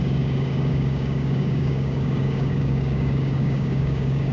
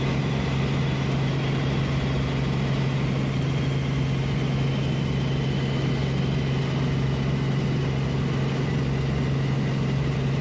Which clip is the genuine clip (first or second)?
second